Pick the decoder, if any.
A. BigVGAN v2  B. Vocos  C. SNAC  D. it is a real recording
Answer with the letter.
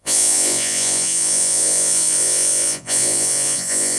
B